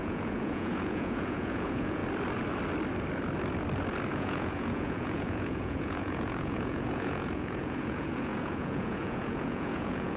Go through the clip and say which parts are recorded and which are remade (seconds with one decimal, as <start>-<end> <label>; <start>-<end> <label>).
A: 0.0-2.0 remade; 2.0-4.1 recorded; 4.1-10.2 remade